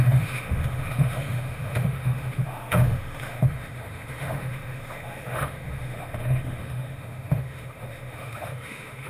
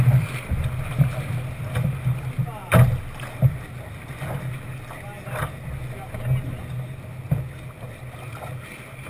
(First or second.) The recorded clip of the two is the second